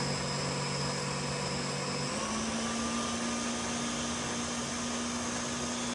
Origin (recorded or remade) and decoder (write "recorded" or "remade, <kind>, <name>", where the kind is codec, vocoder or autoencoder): recorded